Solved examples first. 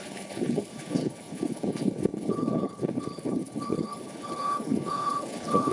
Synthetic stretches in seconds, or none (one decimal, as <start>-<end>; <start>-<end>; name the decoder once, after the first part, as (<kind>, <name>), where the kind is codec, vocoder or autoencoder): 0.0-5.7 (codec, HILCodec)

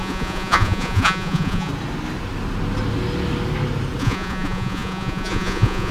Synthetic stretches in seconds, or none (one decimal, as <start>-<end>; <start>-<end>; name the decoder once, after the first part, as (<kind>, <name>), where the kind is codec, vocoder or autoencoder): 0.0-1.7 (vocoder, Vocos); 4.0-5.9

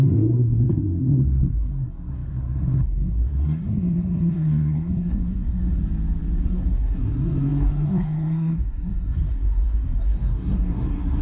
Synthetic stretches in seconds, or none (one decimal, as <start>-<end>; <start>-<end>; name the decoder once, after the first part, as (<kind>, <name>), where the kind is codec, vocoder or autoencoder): 0.0-5.8 (codec, SNAC); 6.4-11.2